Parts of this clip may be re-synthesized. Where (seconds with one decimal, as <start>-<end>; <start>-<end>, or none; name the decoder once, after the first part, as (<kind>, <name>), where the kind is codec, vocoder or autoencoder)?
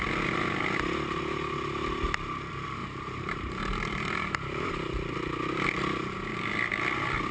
2.8-4.7 (vocoder, BigVGAN v2)